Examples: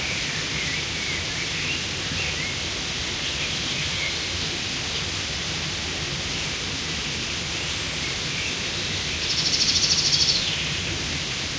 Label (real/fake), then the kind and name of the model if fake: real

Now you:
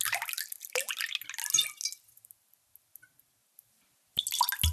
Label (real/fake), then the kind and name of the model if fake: real